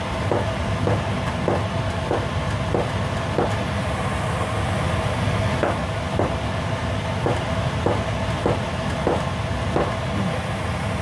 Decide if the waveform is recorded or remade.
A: recorded